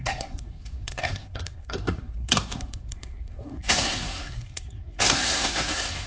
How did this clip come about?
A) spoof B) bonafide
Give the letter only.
A